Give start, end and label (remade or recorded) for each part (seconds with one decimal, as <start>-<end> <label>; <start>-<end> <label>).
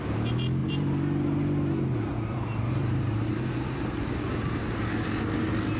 0.0-0.6 recorded; 0.6-4.1 remade; 4.1-5.8 recorded